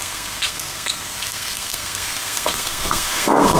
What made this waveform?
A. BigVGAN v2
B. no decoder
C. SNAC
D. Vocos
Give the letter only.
C